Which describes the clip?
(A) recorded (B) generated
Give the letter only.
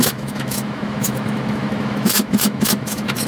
B